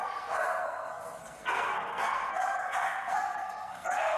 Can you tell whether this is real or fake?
fake